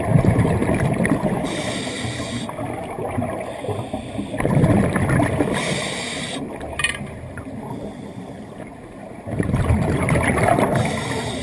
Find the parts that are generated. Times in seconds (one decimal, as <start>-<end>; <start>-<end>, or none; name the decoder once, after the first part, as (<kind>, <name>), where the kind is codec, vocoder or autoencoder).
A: none